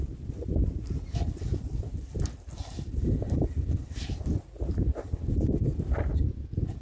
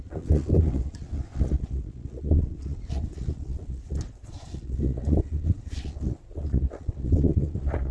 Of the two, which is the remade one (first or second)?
second